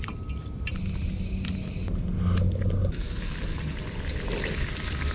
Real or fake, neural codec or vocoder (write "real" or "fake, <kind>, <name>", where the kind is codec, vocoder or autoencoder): real